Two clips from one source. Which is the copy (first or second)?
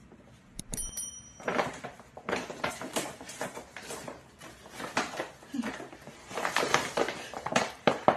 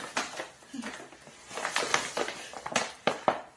first